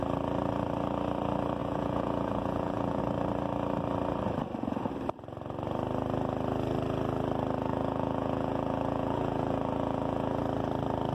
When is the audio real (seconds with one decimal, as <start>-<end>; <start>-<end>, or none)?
0.0-1.6; 3.0-7.7; 10.4-11.1

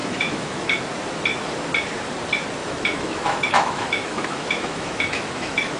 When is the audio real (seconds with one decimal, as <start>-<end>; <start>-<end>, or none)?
0.8-2.6

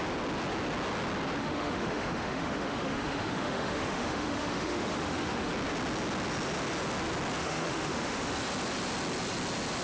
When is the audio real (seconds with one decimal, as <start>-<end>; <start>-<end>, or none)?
0.0-1.4; 5.5-7.4; 8.3-9.8

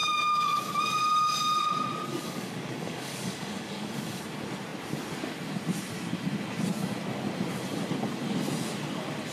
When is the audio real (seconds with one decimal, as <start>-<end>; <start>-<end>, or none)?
0.8-2.1; 4.2-9.3

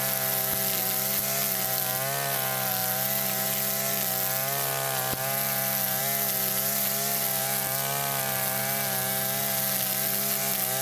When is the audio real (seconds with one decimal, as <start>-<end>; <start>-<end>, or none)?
0.0-10.8

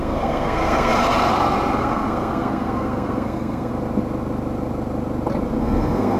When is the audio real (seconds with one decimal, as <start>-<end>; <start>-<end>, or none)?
0.9-1.8; 3.7-5.6